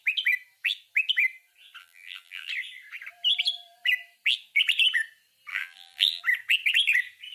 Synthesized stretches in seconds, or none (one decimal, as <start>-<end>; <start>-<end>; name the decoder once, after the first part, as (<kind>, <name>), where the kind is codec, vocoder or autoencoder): 1.8-2.5 (vocoder, BigVGAN v2); 5.5-6.2